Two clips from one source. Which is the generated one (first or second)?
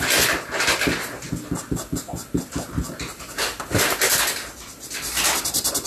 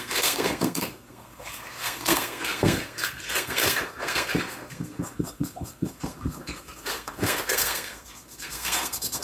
second